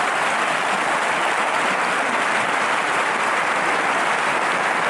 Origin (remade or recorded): recorded